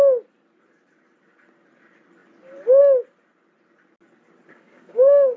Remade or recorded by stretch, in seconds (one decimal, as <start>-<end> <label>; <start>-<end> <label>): 0.0-4.5 recorded; 4.5-5.4 remade